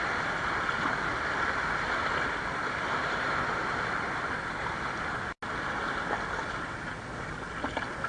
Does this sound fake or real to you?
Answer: real